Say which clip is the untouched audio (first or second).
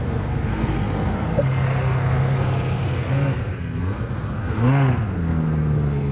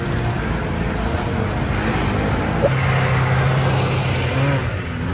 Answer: second